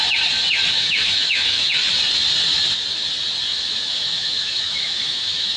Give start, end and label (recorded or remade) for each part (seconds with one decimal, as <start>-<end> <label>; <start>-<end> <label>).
0.0-0.7 recorded; 0.7-1.7 remade; 1.7-3.5 recorded; 3.5-5.6 remade